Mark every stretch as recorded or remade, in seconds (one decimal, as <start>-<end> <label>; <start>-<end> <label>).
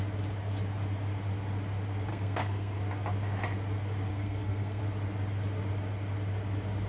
0.0-2.1 recorded; 2.1-2.8 remade; 2.8-4.1 recorded; 4.1-4.8 remade; 4.8-6.9 recorded